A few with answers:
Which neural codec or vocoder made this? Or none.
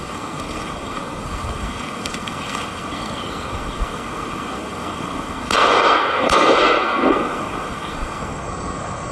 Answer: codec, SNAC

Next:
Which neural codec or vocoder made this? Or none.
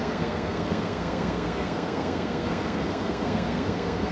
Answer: codec, SNAC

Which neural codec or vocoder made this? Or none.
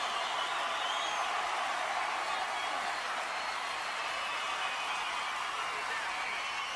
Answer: none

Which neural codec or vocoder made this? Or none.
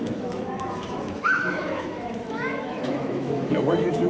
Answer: autoencoder, DAC-VAE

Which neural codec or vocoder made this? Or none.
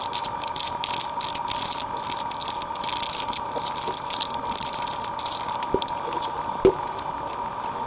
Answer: none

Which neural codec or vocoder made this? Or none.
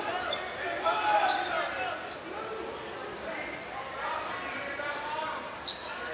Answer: none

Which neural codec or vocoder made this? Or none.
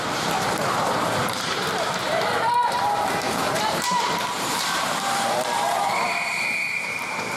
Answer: vocoder, BigVGAN v2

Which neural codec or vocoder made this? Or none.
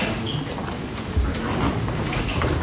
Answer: none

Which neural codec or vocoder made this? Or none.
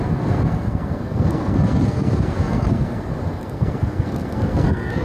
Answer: codec, SNAC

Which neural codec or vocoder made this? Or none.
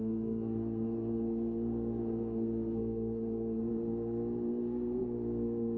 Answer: codec, SNAC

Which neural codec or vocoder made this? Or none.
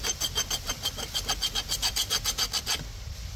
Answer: none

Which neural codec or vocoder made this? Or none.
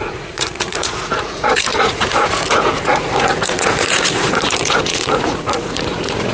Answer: vocoder, Vocos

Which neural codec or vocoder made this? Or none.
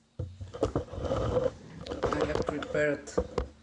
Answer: vocoder, BigVGAN v2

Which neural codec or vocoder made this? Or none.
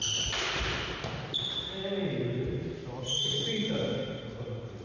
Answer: none